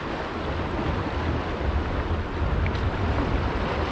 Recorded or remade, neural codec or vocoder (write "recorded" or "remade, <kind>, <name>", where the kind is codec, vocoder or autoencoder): recorded